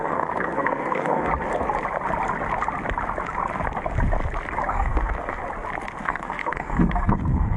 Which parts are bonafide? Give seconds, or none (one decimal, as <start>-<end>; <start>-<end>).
1.3-4.7; 5.4-6.0